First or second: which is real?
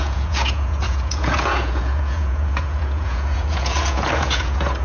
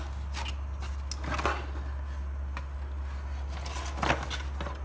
second